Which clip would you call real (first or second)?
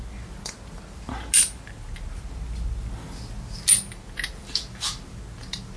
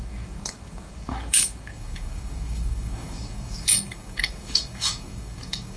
first